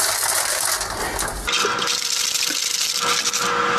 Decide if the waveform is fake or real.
real